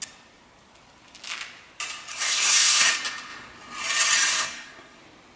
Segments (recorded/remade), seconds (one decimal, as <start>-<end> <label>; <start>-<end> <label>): 0.0-2.1 recorded; 2.1-2.9 remade; 2.9-4.3 recorded; 4.3-5.0 remade; 5.0-5.4 recorded